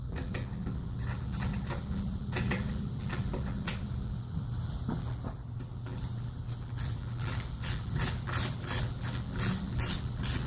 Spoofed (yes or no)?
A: yes